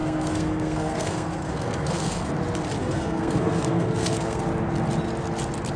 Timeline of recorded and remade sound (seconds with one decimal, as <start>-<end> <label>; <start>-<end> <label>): 0.0-2.3 remade; 2.3-2.8 recorded; 2.8-4.4 remade; 4.4-5.8 recorded